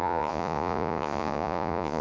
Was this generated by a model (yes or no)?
yes